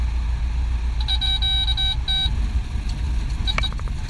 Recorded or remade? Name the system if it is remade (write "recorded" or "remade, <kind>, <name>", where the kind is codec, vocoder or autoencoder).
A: recorded